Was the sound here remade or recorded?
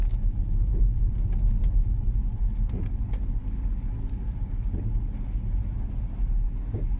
recorded